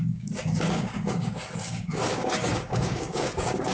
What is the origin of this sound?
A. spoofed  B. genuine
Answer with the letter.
A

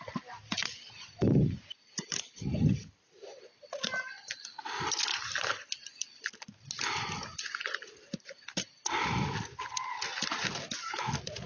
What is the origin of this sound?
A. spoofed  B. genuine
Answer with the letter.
B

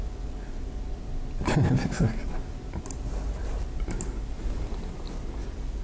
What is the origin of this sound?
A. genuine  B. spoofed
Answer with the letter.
A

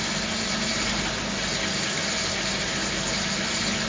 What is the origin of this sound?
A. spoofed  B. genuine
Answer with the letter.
B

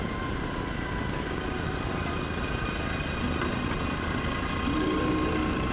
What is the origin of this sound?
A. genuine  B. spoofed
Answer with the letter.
A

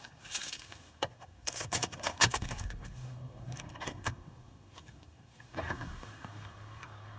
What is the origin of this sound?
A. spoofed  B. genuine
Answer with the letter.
A